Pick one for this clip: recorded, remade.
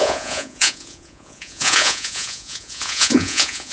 remade